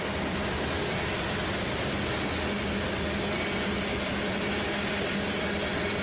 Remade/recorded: recorded